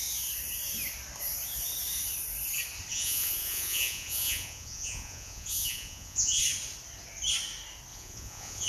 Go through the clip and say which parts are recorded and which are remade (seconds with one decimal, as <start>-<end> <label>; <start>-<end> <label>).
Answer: 0.0-2.9 recorded; 2.9-6.4 remade; 6.4-7.9 recorded; 7.9-8.7 remade